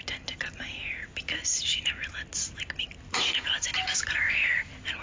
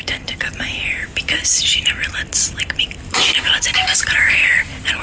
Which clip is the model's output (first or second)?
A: second